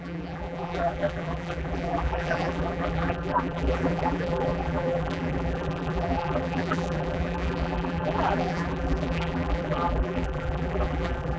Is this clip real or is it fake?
fake